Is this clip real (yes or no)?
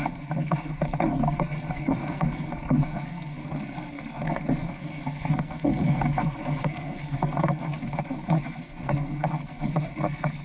no